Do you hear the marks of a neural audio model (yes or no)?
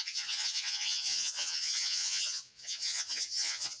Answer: yes